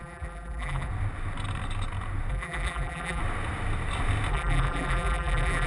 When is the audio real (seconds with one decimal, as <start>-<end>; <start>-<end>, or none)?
0.9-2.3; 3.2-4.3